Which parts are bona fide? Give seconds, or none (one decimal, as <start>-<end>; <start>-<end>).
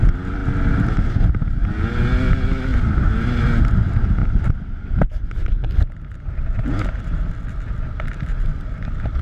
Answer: 0.0-0.4; 1.3-2.7; 3.6-4.2; 5.7-8.5